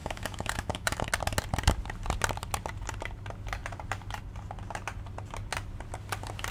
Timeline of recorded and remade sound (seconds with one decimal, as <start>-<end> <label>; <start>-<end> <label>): 0.0-1.1 remade; 1.1-6.5 recorded